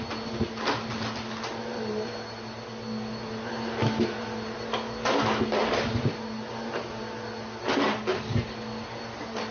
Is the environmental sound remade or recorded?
recorded